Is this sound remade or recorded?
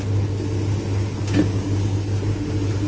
recorded